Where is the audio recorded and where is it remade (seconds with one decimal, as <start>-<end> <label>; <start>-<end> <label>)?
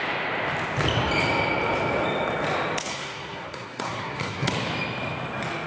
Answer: 0.0-2.9 recorded; 2.9-4.5 remade; 4.5-5.7 recorded